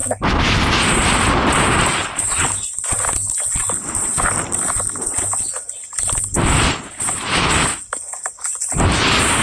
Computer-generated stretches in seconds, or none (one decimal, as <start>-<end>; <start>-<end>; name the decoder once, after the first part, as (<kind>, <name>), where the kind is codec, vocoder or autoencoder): none